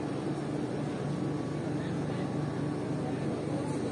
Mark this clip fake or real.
real